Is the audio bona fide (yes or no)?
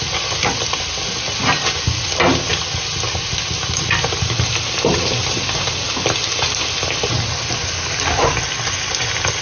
yes